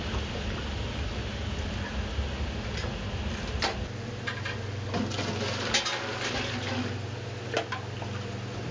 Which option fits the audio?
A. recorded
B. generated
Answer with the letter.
A